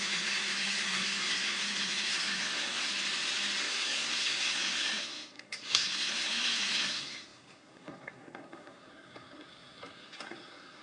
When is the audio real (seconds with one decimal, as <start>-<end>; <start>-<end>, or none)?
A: 2.9-3.6